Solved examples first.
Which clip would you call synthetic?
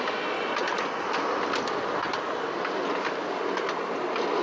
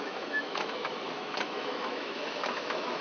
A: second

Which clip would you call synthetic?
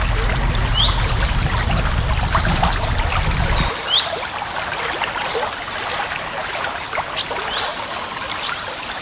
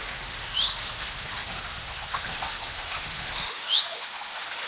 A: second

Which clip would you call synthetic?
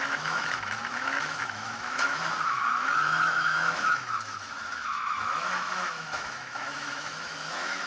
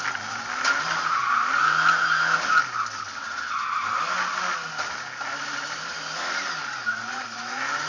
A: first